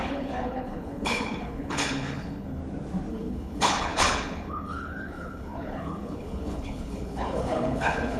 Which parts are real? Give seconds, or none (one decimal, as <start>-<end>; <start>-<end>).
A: 2.6-3.1